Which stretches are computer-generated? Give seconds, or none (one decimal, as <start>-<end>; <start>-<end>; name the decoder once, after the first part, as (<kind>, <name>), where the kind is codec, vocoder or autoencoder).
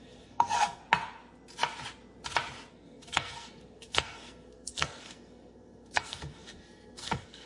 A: 0.0-0.8 (codec, SNAC); 2.7-7.5